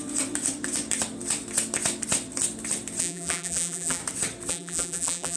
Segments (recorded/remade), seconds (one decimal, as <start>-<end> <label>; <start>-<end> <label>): 0.0-3.0 recorded; 3.0-4.0 remade; 4.0-4.5 recorded; 4.5-5.4 remade